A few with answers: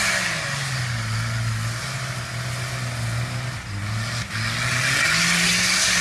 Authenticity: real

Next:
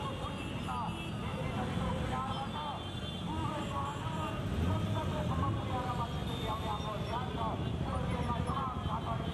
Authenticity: real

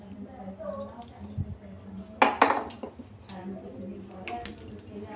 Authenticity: real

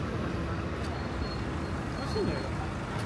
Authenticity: real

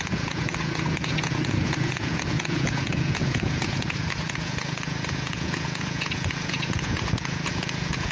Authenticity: fake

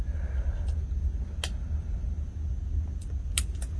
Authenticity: real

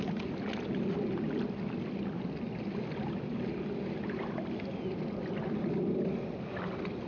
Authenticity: real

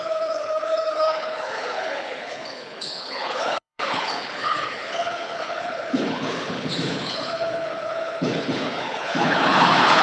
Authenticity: fake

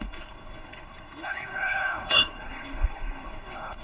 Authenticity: fake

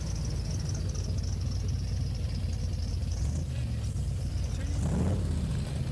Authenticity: real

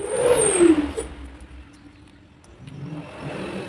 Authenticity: real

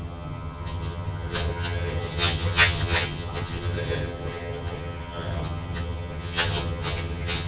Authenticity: fake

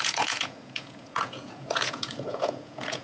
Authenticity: fake